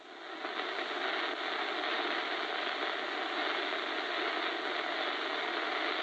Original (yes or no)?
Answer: yes